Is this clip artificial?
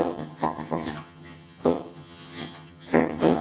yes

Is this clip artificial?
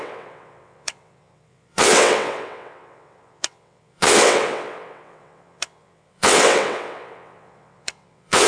yes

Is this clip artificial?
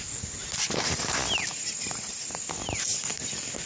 no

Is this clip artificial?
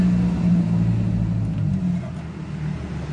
no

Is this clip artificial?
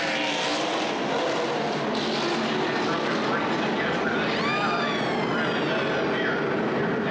no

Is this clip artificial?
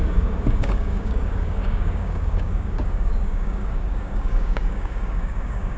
yes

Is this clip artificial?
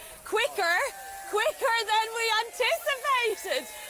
no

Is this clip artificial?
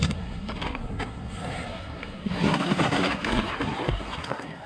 yes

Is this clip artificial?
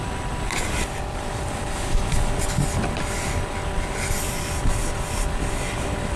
no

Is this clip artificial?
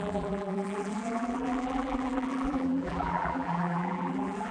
yes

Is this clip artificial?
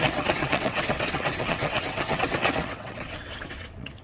yes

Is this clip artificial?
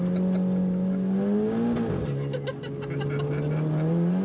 no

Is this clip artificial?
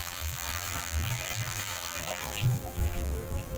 yes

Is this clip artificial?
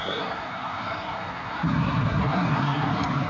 yes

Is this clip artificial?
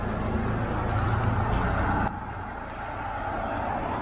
no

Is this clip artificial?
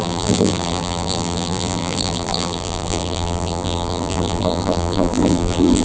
yes